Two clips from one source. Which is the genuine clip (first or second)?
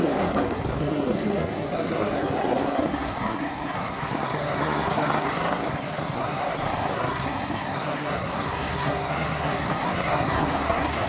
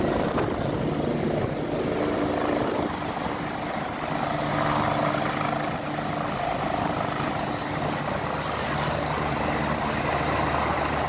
second